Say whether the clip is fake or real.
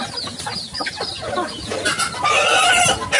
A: real